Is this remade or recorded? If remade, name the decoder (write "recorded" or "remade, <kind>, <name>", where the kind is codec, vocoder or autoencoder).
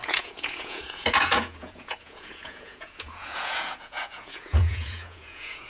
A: remade, vocoder, Vocos